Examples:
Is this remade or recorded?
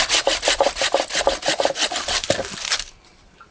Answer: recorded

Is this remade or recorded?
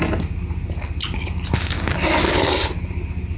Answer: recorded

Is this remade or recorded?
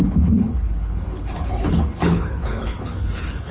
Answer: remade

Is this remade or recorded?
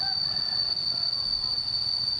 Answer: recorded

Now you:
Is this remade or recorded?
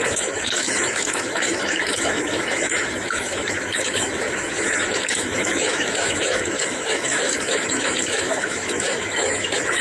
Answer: remade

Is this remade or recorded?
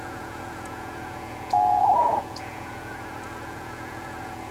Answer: remade